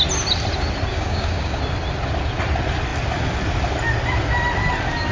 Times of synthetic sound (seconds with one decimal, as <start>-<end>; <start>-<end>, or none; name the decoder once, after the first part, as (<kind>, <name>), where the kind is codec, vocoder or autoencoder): 0.9-1.6 (codec, DAC)